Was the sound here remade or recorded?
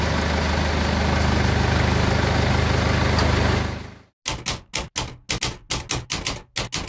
recorded